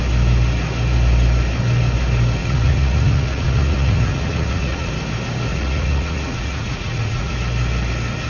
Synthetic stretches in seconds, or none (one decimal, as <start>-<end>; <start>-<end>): 2.4-4.9; 5.5-7.3